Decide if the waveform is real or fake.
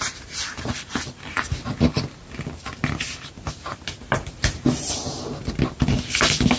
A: real